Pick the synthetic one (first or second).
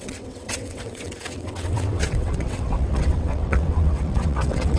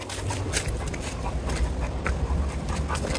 first